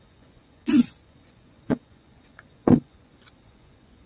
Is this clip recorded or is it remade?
remade